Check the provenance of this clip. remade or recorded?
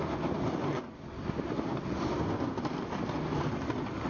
recorded